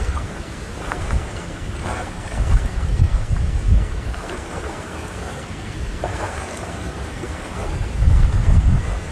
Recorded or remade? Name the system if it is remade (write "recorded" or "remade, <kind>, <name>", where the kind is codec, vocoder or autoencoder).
remade, codec, SNAC